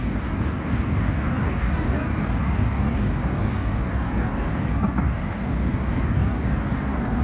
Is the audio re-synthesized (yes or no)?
yes